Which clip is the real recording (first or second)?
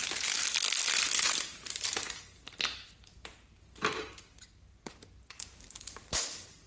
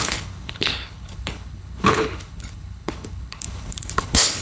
first